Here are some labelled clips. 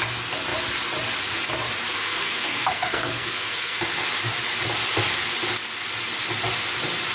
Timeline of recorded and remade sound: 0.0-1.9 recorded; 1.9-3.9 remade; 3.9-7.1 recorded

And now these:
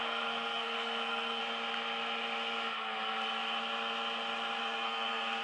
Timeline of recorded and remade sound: 0.0-1.4 remade; 1.4-4.6 recorded; 4.6-5.4 remade

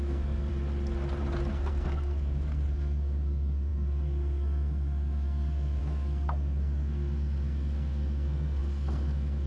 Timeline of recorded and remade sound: 0.0-0.5 remade; 0.5-1.5 recorded; 1.5-9.5 remade

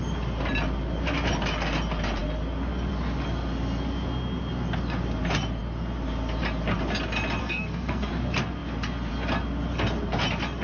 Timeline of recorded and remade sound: 0.0-7.4 recorded; 7.4-8.1 remade; 8.1-10.6 recorded

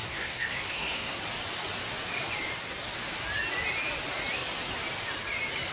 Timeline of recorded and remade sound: 0.0-1.2 remade; 1.2-5.7 recorded

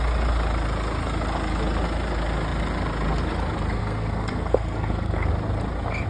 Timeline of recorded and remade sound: 0.0-3.8 recorded; 3.8-5.3 remade; 5.3-6.1 recorded

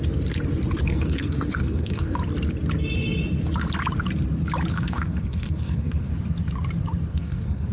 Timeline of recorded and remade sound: 0.0-0.8 recorded; 0.8-2.1 remade; 2.1-4.7 recorded; 4.7-6.1 remade; 6.1-7.1 recorded; 7.1-7.7 remade